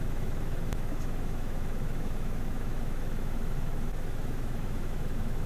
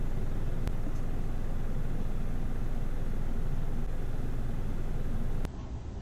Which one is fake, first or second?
first